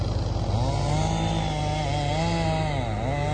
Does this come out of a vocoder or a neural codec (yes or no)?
no